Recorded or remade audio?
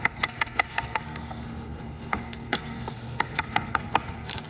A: remade